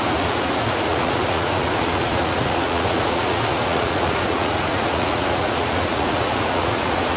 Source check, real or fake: fake